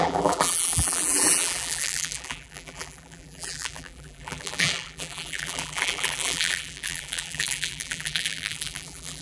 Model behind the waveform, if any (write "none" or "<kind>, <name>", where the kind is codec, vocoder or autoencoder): vocoder, BigVGAN v2